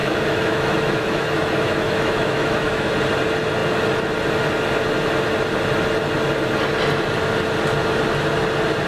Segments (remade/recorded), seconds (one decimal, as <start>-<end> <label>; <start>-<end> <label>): 0.0-2.9 remade; 2.9-8.9 recorded